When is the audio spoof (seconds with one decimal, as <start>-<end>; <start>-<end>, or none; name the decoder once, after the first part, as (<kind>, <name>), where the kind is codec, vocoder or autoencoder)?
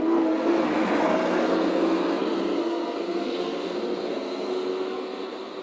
0.0-5.6 (codec, SNAC)